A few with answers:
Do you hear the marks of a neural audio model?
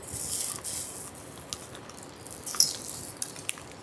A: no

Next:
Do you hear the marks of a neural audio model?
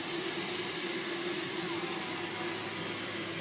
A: no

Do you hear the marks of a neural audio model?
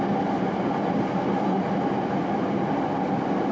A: no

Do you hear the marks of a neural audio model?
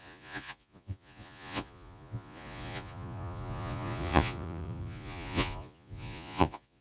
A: yes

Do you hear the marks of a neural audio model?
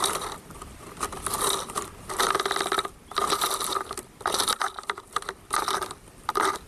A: no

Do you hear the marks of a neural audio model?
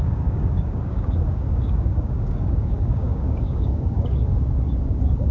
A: yes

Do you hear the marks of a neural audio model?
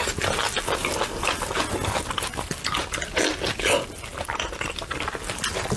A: no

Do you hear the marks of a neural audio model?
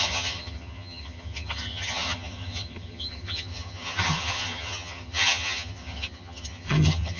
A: yes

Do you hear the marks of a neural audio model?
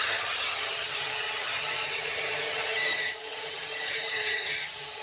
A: yes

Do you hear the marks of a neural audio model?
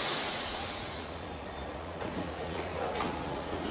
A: yes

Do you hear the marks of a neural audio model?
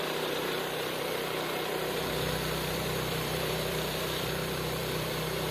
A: yes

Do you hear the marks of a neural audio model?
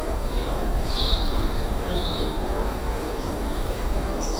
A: yes